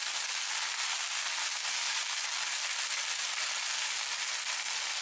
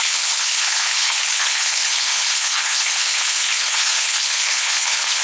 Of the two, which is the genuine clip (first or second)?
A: first